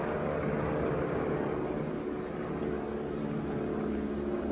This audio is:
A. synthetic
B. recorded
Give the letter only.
B